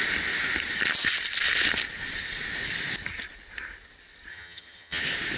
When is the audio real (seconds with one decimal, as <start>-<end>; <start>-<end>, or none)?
0.0-4.3; 5.0-5.4